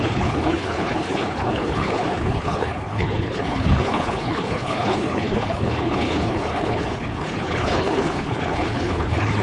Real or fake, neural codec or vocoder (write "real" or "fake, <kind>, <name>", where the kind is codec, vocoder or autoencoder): fake, codec, HILCodec